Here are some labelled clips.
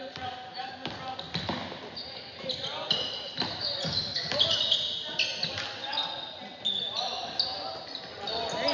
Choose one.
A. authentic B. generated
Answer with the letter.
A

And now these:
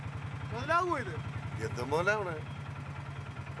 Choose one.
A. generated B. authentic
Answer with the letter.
B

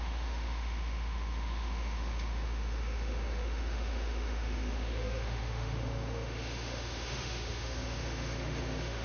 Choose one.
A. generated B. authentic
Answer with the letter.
A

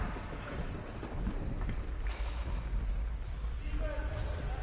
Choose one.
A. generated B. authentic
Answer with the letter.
B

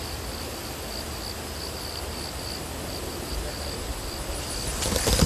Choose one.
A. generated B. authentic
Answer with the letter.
B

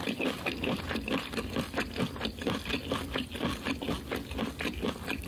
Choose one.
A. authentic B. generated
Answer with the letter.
A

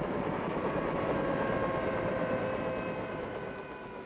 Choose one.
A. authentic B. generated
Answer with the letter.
A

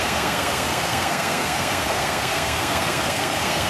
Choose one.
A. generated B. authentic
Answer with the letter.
A